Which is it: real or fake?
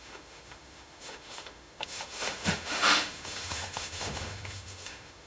fake